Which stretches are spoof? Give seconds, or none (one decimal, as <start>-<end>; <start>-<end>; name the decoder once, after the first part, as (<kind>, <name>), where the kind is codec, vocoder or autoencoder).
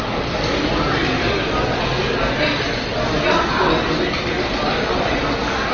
none